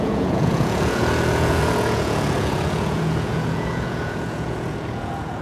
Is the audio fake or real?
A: fake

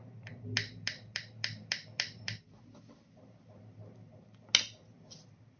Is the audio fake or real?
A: real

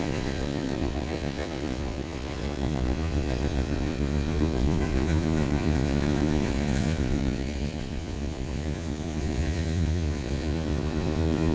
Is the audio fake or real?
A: fake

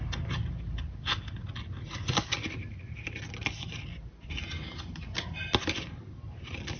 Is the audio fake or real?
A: real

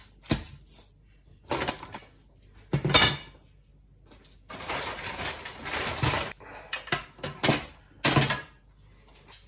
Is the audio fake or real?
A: real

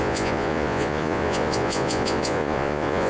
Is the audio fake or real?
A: fake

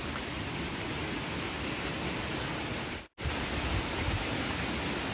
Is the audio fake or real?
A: real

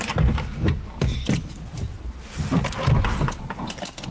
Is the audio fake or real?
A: real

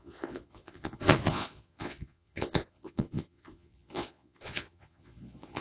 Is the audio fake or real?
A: fake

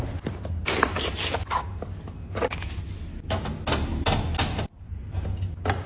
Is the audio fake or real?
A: real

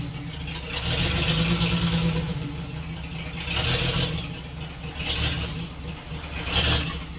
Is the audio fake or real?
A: real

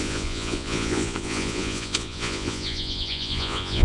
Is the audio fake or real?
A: fake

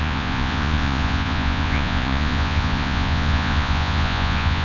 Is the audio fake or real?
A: fake